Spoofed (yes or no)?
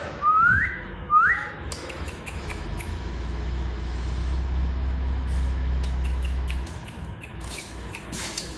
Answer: yes